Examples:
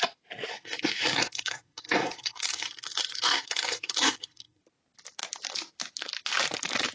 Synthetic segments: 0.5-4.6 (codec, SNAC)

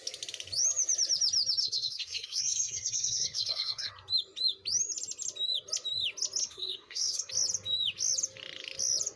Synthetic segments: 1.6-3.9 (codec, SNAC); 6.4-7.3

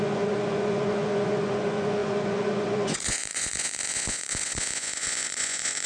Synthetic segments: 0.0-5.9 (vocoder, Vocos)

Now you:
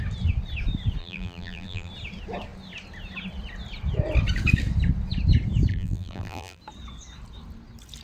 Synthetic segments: 1.0-1.9 (vocoder, BigVGAN v2); 5.7-6.6

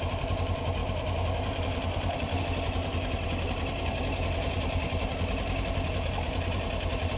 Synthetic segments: none